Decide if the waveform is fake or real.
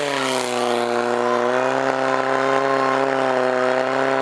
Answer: real